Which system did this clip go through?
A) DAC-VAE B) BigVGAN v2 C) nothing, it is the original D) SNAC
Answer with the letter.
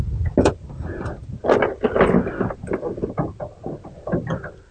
C